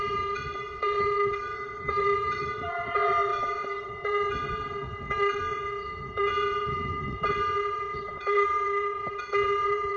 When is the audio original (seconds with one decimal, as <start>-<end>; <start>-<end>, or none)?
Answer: none